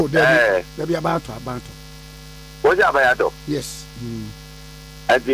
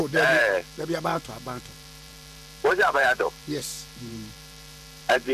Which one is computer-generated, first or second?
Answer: second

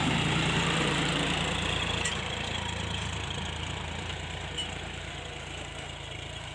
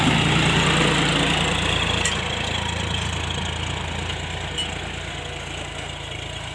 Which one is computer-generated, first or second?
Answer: first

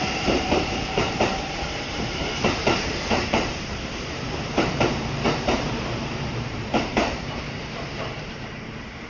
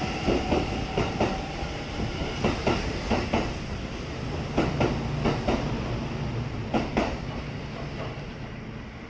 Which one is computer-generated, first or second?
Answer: first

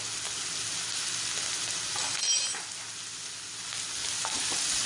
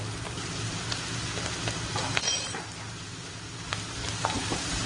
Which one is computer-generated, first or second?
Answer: second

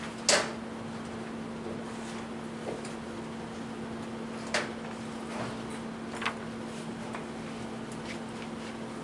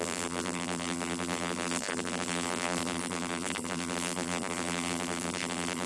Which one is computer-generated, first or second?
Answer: second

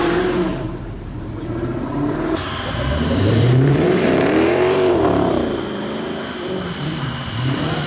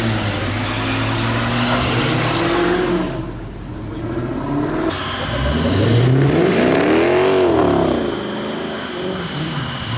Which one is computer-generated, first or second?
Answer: first